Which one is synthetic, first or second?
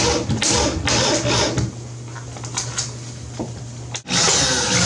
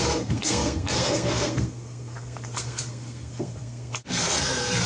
second